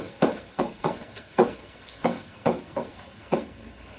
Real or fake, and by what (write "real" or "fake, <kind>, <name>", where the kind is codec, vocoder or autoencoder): fake, codec, SNAC